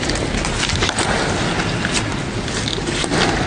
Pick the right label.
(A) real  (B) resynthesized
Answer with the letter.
A